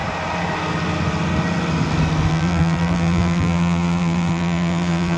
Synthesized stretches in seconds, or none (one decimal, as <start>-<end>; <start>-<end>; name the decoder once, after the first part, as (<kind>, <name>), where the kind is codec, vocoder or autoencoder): 2.3-5.2 (vocoder, BigVGAN v2)